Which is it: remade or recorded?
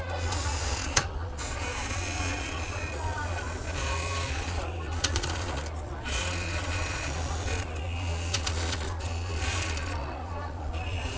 remade